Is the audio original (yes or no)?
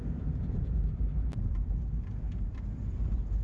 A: no